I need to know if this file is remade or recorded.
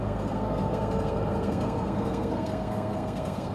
remade